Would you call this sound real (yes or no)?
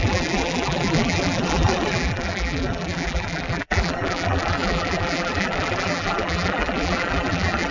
no